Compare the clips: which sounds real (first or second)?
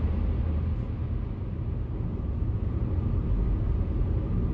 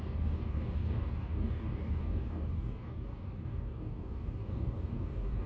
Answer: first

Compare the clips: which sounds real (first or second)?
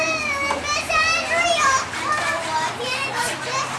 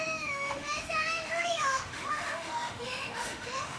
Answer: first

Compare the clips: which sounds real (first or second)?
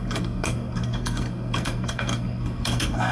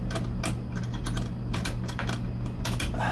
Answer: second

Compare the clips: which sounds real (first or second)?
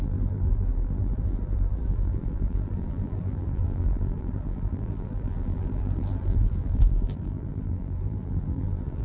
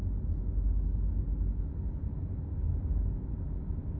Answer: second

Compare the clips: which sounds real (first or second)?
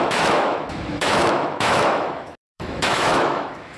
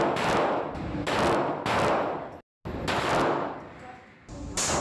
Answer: second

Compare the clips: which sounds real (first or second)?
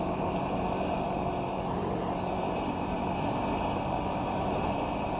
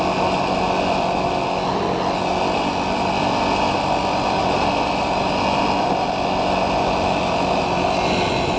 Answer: second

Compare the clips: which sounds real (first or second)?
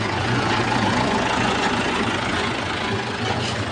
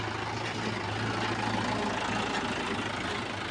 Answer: second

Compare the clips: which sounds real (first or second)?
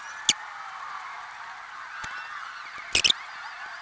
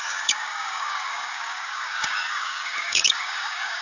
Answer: first